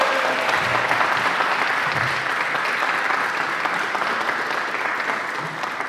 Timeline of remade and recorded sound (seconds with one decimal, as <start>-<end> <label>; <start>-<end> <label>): 0.0-5.9 recorded